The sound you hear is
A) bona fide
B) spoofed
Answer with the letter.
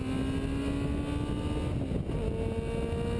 A